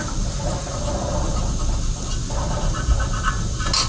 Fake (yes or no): no